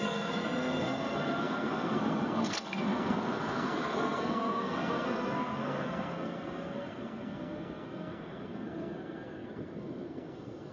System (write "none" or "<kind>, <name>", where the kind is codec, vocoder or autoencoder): codec, SNAC